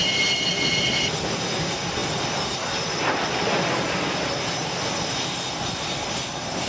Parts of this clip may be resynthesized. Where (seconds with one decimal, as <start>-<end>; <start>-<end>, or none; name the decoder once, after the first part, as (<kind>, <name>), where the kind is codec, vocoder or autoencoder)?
none